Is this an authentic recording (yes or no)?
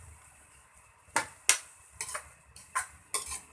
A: yes